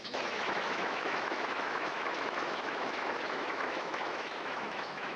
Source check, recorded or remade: remade